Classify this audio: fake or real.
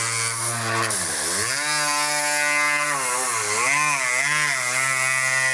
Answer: real